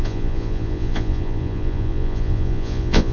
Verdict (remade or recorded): remade